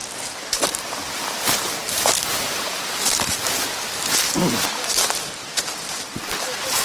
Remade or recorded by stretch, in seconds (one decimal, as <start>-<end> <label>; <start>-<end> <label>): 0.0-1.2 remade; 1.2-5.4 recorded; 5.4-6.1 remade; 6.1-6.8 recorded